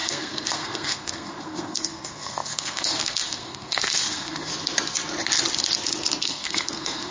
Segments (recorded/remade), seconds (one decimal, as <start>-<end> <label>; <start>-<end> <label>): 0.0-4.5 remade; 4.5-6.2 recorded; 6.2-7.1 remade

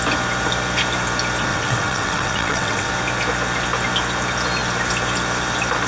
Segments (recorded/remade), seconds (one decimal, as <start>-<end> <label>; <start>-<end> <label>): 0.0-1.5 recorded; 1.5-2.9 remade; 2.9-5.9 recorded

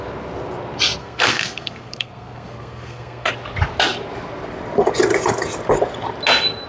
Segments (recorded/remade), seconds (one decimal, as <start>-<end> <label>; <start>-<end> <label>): 0.0-1.0 recorded; 1.0-3.3 remade; 3.3-6.7 recorded

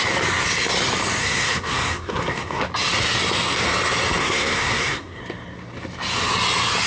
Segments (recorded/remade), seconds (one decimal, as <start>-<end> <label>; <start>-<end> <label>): 0.0-1.2 recorded; 1.2-2.6 remade; 2.6-4.2 recorded; 4.2-5.2 remade; 5.2-6.9 recorded

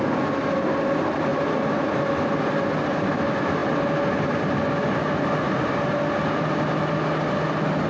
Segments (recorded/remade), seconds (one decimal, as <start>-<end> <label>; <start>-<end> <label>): 0.0-7.9 recorded

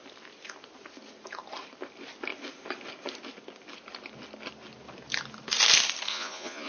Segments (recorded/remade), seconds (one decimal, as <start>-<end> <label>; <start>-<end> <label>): 0.0-6.1 recorded; 6.1-6.7 remade

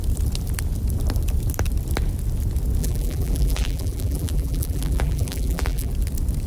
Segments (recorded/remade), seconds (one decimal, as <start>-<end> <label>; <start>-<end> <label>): 0.0-2.8 recorded; 2.8-5.9 remade; 5.9-6.5 recorded